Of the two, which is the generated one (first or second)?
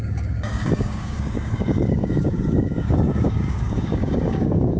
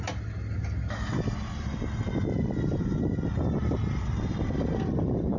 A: first